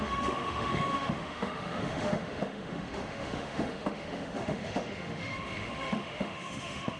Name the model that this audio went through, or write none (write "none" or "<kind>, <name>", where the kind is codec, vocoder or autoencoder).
autoencoder, DAC-VAE